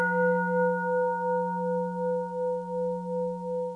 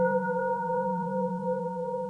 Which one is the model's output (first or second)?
second